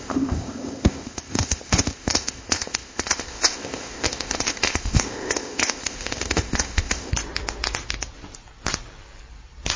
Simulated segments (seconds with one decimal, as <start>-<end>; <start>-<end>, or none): 0.0-7.1